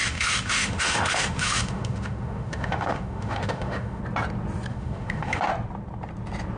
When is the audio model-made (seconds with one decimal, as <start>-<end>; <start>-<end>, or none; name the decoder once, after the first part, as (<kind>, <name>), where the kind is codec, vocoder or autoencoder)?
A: 0.0-4.0 (autoencoder, DAC-VAE); 4.7-5.5